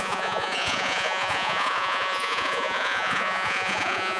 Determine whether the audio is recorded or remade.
remade